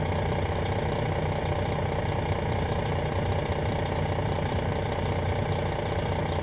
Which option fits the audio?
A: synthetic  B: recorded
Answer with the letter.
B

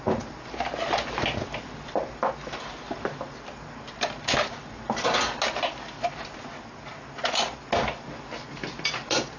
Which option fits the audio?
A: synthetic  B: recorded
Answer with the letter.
B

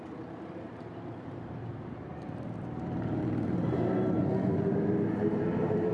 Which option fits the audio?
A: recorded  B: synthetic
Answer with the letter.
B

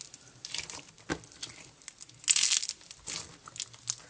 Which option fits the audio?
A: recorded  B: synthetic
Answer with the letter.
A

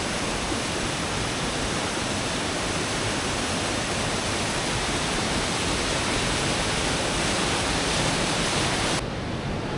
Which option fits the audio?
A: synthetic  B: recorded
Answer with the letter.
B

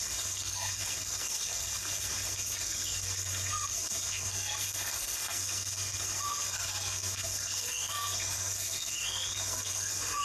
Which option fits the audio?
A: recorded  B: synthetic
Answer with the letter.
B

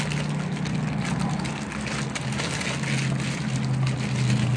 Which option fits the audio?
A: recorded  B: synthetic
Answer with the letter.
A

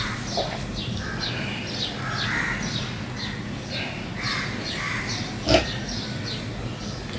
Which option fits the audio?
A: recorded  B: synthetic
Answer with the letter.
A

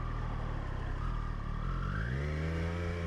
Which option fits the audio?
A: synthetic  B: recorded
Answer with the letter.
B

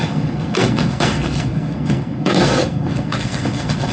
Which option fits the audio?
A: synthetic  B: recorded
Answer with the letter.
A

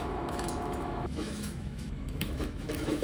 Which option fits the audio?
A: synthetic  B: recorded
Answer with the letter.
A